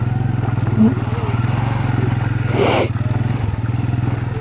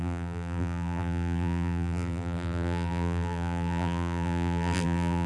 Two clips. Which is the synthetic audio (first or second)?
second